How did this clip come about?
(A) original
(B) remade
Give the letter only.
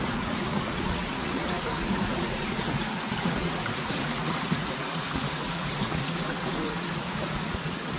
B